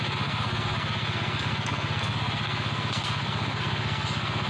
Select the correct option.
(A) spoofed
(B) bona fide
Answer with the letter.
A